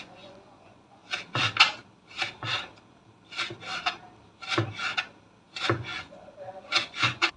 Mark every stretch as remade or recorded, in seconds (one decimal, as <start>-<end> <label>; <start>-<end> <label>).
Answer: 0.0-1.0 remade; 1.0-5.4 recorded; 5.4-7.4 remade